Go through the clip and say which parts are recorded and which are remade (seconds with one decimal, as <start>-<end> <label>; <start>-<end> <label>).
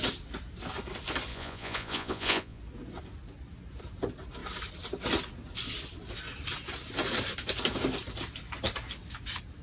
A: 0.0-1.3 recorded; 1.3-2.6 remade; 2.6-9.6 recorded